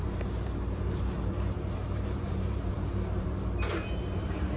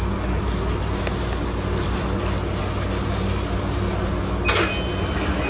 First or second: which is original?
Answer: second